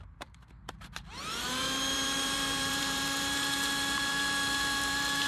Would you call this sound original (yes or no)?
no